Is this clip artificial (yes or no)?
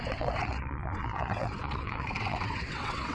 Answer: yes